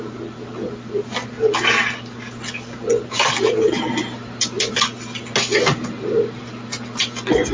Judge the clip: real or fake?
real